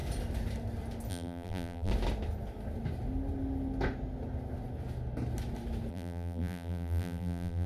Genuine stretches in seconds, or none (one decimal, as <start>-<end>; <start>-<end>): 0.0-1.1; 1.9-5.9